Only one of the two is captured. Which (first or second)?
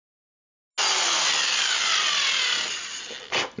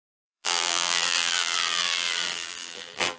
first